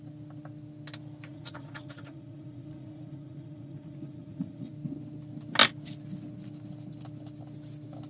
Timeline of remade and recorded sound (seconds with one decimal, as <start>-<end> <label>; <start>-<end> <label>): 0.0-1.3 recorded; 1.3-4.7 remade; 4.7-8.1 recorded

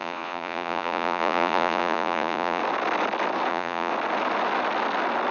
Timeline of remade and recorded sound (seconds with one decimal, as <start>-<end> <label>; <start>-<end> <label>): 0.0-2.6 remade; 2.6-3.5 recorded; 3.5-3.9 remade; 3.9-5.3 recorded

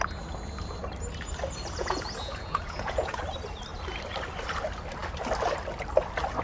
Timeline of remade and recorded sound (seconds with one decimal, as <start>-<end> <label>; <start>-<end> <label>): 0.0-1.8 recorded; 1.8-3.2 remade; 3.2-6.4 recorded